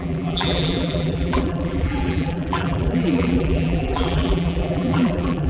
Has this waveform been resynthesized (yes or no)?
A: yes